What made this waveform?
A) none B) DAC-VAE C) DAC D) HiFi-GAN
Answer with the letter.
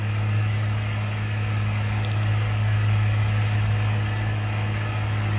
C